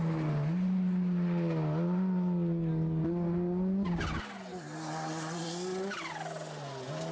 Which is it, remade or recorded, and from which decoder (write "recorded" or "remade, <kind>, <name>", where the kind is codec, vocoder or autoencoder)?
recorded